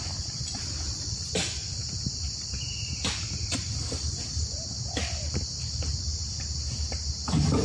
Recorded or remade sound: recorded